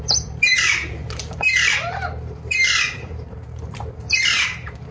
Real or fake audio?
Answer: fake